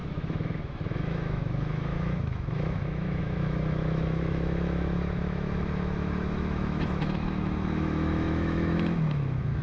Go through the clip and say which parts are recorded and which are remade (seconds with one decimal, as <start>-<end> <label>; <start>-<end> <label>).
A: 0.0-9.6 remade